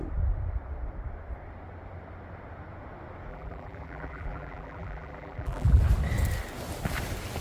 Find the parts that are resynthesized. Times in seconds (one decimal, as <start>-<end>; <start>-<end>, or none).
3.3-5.8